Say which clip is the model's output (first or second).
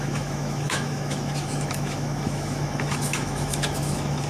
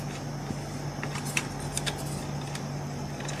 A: first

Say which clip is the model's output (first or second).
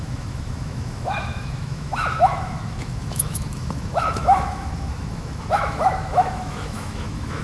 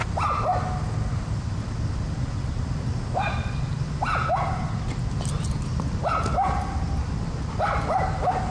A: first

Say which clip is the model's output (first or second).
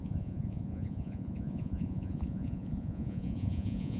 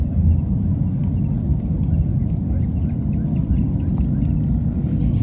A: first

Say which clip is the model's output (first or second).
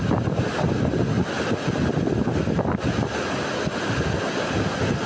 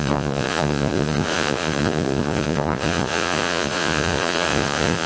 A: second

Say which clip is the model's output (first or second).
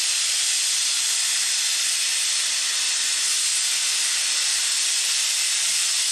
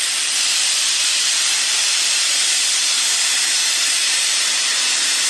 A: second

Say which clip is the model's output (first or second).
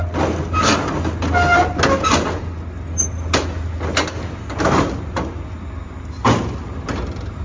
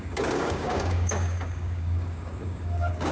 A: second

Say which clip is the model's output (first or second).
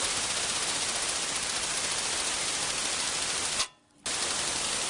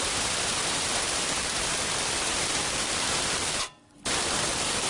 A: second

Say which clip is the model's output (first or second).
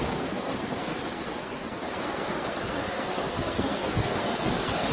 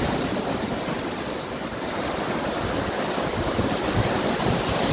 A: first